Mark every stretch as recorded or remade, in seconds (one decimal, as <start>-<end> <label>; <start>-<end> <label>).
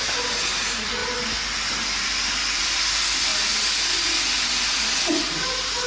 0.0-5.9 recorded